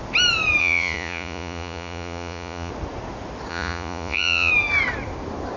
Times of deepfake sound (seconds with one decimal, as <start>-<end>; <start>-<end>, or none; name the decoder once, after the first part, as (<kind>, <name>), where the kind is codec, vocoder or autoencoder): 0.6-2.7 (vocoder, Vocos); 3.5-4.5